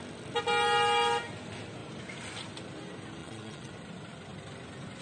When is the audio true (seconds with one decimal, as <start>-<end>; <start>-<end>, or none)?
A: 0.0-3.2; 3.7-5.0